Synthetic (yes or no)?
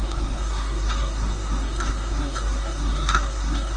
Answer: yes